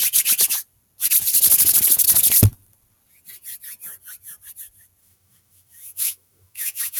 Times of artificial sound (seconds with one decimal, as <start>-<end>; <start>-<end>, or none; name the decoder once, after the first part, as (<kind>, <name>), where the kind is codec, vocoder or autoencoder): 5.0-7.0 (autoencoder, DAC-VAE)